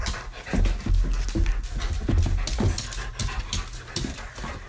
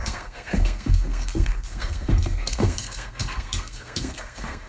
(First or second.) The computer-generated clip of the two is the second